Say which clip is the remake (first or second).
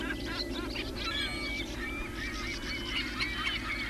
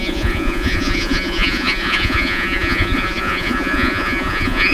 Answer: second